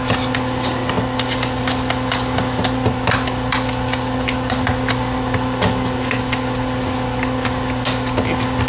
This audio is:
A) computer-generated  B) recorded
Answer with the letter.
B